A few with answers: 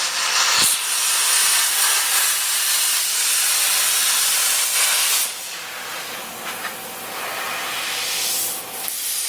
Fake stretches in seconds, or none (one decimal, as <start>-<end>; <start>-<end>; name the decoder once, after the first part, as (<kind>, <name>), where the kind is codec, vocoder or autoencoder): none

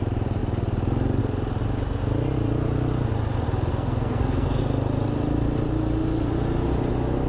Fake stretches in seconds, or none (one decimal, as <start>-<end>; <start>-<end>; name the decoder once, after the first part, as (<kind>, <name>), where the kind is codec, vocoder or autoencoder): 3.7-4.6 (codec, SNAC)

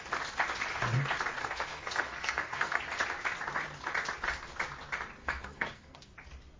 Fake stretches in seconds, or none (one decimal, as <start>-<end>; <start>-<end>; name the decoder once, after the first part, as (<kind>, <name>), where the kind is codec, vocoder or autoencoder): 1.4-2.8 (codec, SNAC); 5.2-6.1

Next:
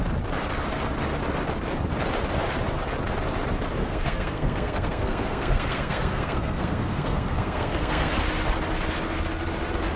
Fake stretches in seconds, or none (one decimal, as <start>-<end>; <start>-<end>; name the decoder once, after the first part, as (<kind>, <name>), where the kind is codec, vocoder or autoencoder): 3.8-8.1 (codec, SNAC)

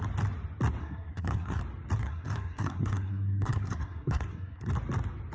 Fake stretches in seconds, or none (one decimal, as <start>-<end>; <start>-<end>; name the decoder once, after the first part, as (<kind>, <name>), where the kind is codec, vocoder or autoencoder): 0.8-1.6 (codec, SNAC); 2.0-4.7

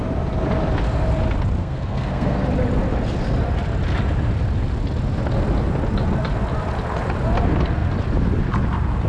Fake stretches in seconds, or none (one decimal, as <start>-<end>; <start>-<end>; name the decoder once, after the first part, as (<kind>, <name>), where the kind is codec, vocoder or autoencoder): 1.6-2.4 (codec, SNAC)

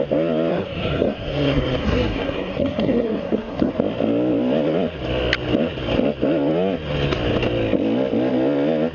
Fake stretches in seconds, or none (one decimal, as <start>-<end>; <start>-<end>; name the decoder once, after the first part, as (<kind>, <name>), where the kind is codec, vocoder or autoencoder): 0.5-3.7 (codec, SNAC)

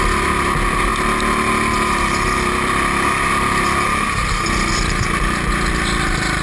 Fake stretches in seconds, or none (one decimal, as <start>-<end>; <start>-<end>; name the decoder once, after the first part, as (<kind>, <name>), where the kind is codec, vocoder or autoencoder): none